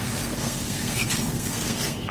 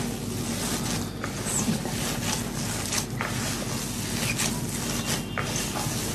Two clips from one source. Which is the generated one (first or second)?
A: first